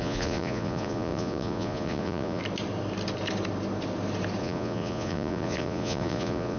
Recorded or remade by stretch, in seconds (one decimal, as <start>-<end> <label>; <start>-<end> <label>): 0.0-2.4 remade; 2.4-4.4 recorded; 4.4-6.6 remade